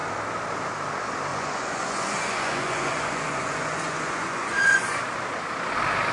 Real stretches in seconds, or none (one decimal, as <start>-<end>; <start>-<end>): 0.0-1.3; 5.0-6.1